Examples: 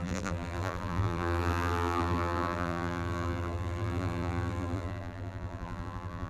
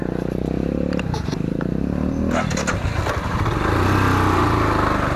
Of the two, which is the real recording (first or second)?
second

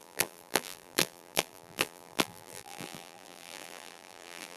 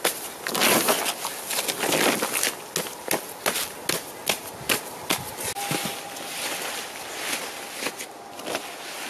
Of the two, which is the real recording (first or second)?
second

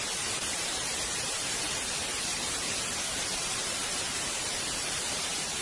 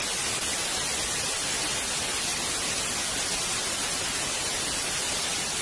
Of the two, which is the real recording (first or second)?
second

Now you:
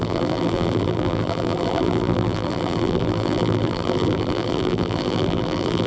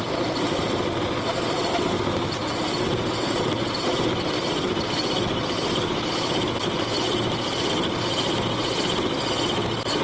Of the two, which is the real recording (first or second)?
second